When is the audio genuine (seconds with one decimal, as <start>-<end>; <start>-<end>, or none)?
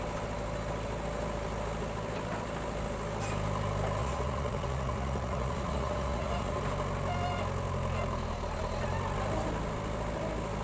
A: 0.0-4.0; 6.6-10.6